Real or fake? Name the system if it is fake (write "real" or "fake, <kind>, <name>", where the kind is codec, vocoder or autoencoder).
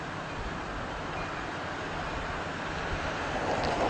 real